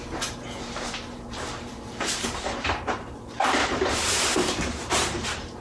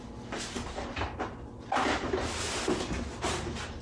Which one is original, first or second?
second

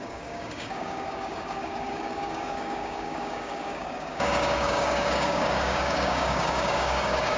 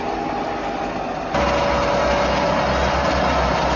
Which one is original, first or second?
second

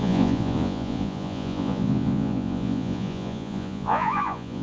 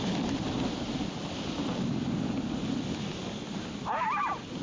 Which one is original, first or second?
second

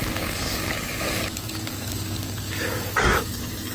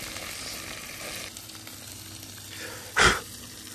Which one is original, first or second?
second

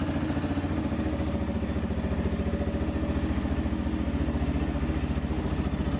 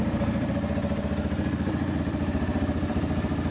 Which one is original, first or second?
first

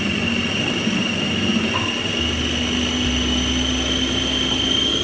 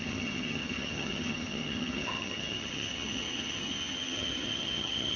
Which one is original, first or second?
first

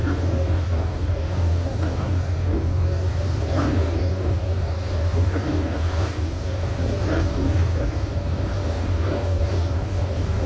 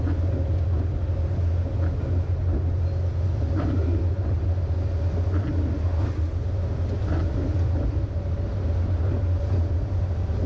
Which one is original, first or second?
second